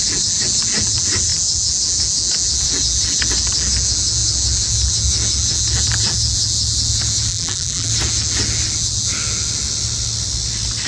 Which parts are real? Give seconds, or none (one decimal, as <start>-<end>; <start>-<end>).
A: 0.0-7.3; 7.9-10.9